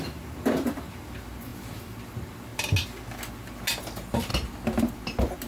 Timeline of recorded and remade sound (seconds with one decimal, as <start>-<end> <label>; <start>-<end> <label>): 0.0-2.5 remade; 2.5-3.8 recorded; 3.8-4.3 remade; 4.3-5.5 recorded